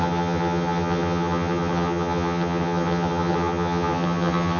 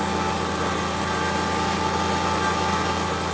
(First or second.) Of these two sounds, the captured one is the second